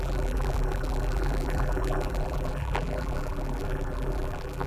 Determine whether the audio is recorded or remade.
remade